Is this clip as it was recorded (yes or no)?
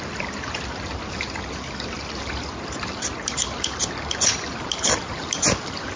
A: yes